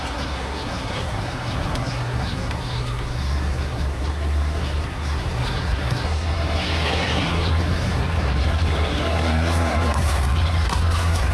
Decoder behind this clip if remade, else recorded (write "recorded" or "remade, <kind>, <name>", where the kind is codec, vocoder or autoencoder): remade, codec, SNAC